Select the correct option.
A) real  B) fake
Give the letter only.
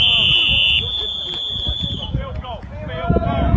B